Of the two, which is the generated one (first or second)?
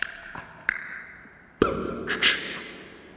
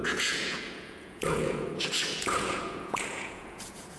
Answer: second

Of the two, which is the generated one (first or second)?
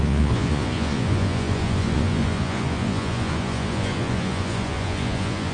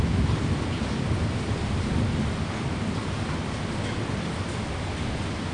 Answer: first